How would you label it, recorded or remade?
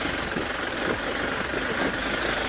recorded